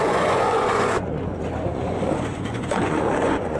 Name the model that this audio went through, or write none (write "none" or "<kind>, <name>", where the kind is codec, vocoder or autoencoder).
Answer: vocoder, Vocos